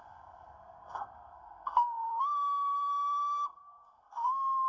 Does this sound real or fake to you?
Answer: fake